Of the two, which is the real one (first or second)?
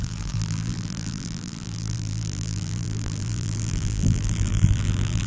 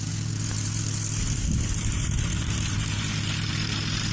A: second